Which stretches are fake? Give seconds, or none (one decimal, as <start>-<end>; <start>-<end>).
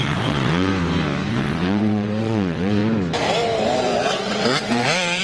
0.0-0.7; 1.3-2.8; 4.1-5.2